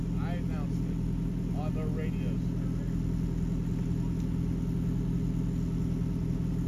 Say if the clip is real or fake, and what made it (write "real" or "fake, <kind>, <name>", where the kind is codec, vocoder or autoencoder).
real